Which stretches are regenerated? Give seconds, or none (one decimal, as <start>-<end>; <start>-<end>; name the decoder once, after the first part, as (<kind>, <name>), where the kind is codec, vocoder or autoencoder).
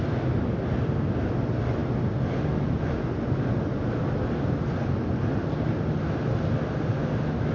none